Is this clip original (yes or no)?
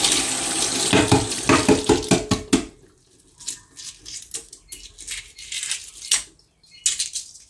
yes